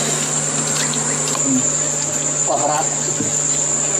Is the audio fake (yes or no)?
no